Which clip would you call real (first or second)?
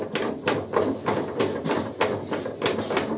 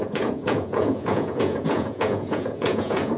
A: first